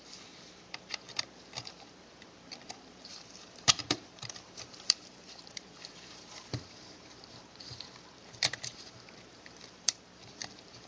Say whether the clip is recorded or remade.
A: remade